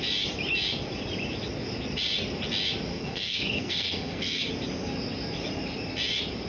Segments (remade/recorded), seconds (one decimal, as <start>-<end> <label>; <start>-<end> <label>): 0.0-2.9 recorded; 2.9-4.5 remade; 4.5-6.5 recorded

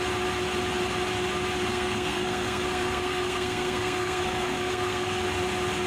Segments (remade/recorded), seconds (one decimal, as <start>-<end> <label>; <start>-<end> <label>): 0.0-1.7 recorded; 1.7-5.2 remade; 5.2-5.9 recorded

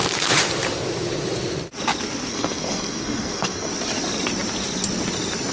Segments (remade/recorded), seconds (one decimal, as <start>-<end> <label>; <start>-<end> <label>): 0.0-2.3 recorded; 2.3-3.7 remade; 3.7-5.5 recorded

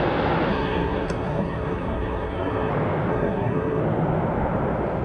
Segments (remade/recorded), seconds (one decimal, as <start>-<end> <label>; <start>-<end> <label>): 0.0-0.5 recorded; 0.5-2.7 remade; 2.7-3.1 recorded; 3.1-3.8 remade; 3.8-5.0 recorded

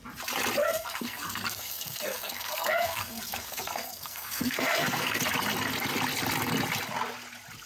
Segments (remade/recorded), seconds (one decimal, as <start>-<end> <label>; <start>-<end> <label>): 0.0-0.6 recorded; 0.6-5.2 remade; 5.2-7.7 recorded

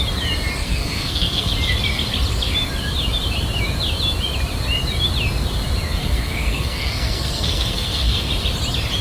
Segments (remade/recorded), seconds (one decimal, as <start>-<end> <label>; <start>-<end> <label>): 0.0-0.6 recorded; 0.6-1.5 remade; 1.5-6.0 recorded; 6.0-8.3 remade; 8.3-9.0 recorded